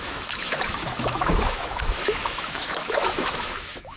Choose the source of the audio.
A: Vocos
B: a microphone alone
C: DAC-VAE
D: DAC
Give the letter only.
C